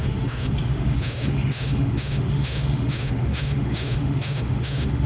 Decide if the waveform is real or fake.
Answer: fake